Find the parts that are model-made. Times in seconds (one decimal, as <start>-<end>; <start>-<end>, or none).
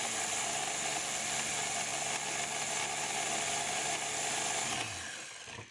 none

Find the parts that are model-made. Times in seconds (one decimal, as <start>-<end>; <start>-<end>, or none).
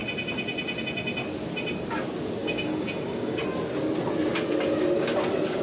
2.4-3.4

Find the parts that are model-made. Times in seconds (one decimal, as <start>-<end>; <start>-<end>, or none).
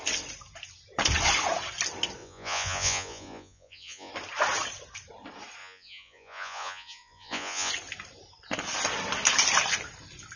2.2-4.1; 5.6-7.7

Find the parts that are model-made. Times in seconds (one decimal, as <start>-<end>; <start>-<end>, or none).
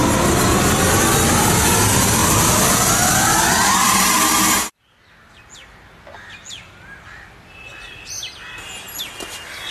none